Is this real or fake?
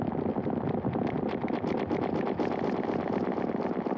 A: real